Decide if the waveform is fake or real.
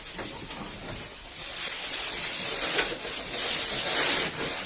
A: real